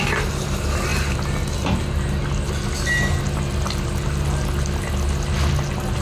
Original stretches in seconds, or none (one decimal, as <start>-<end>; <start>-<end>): 0.0-6.0